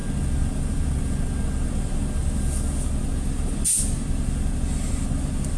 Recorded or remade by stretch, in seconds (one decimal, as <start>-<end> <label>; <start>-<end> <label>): 0.0-5.6 recorded